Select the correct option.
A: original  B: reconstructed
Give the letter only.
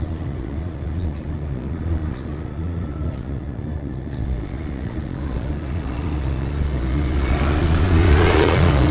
B